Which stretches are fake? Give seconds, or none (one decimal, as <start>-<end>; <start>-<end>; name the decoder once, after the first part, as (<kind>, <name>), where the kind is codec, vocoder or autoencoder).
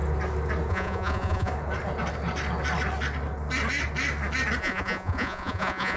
0.7-1.5 (vocoder, Vocos); 4.6-6.0